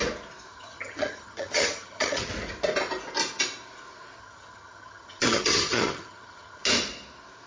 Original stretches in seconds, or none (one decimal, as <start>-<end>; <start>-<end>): 0.0-0.5; 2.3-4.2; 6.6-7.5